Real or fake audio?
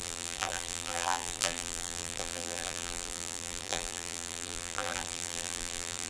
fake